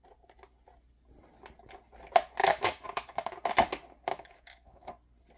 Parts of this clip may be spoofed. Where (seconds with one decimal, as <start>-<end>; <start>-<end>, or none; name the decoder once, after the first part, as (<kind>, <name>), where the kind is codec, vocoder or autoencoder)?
2.4-3.3 (autoencoder, DAC-VAE); 4.1-4.9